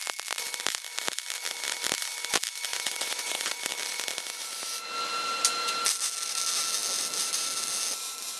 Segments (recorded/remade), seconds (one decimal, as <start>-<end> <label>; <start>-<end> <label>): 0.0-2.7 recorded; 2.7-3.6 remade; 3.6-8.4 recorded